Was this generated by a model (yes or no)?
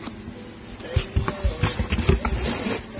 no